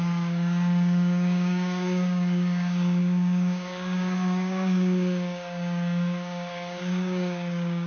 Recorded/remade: remade